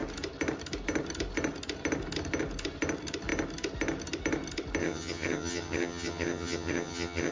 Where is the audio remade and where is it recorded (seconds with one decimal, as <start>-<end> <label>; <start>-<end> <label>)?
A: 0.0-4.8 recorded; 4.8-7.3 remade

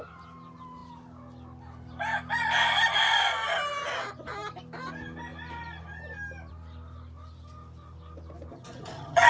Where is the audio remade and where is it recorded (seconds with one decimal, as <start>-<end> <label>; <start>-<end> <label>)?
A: 0.0-8.5 recorded; 8.5-9.3 remade

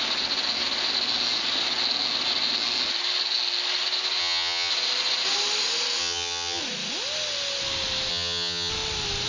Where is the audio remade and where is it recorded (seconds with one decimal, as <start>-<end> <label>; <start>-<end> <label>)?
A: 0.0-4.2 recorded; 4.2-4.7 remade; 4.7-6.0 recorded; 6.0-6.6 remade; 6.6-8.1 recorded; 8.1-8.7 remade; 8.7-9.3 recorded

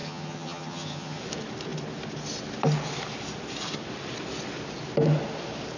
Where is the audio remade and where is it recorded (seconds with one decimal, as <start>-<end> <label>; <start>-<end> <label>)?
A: 0.0-1.2 remade; 1.2-5.8 recorded

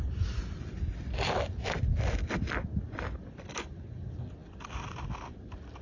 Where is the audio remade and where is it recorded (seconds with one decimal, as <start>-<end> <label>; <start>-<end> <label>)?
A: 0.0-5.8 recorded